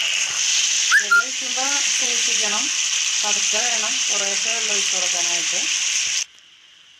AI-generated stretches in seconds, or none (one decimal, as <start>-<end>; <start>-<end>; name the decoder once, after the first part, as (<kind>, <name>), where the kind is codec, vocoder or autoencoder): 0.0-0.5 (vocoder, BigVGAN v2); 1.2-4.5; 5.2-7.0